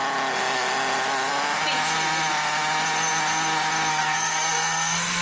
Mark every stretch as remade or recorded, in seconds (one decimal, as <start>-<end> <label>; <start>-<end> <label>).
0.0-3.9 recorded; 3.9-5.2 remade